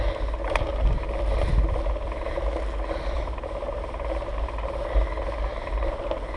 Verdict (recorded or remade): recorded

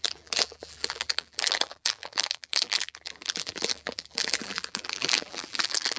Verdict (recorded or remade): remade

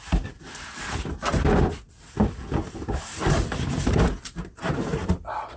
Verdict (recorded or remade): recorded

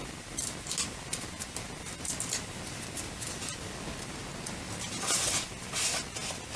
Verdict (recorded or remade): recorded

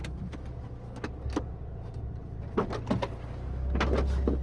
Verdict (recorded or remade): recorded